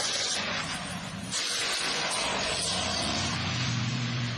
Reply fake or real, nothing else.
fake